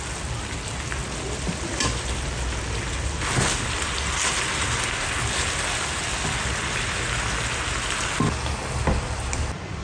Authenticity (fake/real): real